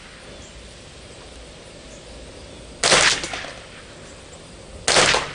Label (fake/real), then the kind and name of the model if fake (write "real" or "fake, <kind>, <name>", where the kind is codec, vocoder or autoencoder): real